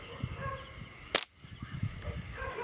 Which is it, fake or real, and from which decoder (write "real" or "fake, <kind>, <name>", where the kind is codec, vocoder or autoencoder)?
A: real